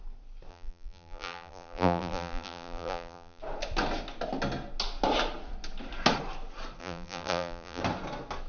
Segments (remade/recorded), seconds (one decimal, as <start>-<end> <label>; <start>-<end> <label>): 0.0-0.5 recorded; 0.5-3.4 remade; 3.4-6.8 recorded; 6.8-7.8 remade; 7.8-8.5 recorded